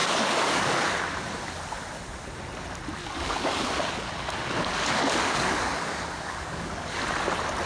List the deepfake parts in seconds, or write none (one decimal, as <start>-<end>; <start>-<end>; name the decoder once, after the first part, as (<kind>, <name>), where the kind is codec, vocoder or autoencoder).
0.0-1.0 (codec, DAC); 3.0-7.0